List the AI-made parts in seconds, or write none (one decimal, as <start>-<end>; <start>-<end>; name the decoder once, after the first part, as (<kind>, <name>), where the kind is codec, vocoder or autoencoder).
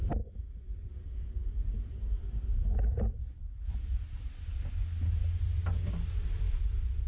0.0-1.4 (vocoder, BigVGAN v2); 1.9-4.8; 5.4-7.1